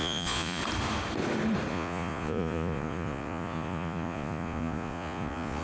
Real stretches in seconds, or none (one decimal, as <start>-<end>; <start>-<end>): 0.6-1.7